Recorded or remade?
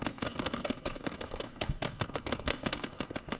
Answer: remade